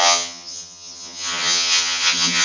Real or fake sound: fake